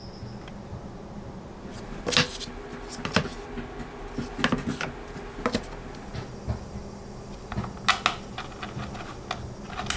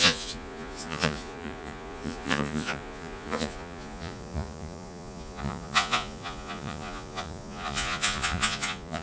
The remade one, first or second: second